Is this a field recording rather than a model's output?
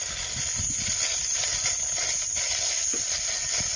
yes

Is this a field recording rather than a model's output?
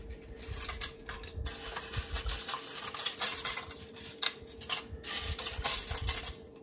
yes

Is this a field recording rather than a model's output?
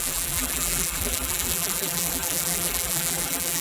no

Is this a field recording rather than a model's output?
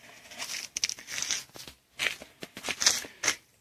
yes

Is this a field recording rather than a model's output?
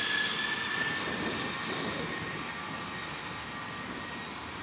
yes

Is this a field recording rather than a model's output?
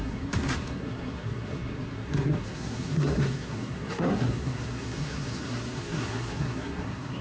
no